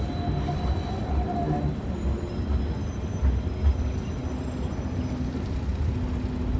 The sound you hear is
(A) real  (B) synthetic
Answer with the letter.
A